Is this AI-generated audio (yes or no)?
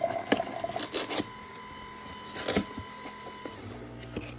no